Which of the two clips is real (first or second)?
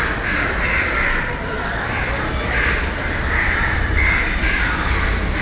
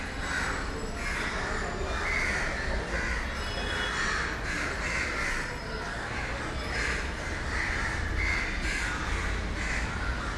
second